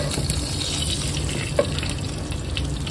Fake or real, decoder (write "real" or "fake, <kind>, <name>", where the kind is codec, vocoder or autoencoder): real